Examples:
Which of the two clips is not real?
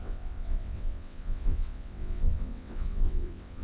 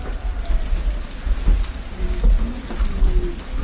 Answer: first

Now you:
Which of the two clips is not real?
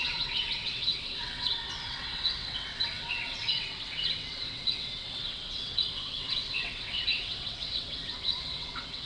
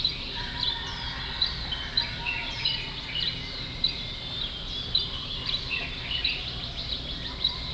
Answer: first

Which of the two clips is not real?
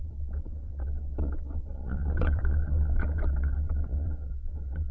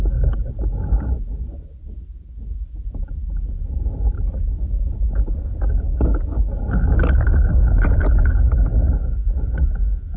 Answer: first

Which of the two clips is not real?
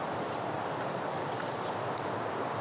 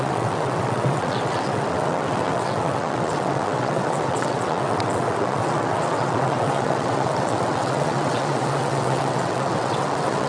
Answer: second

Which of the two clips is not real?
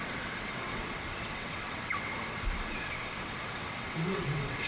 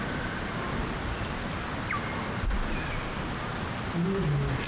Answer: first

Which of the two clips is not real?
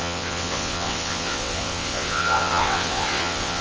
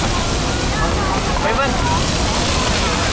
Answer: first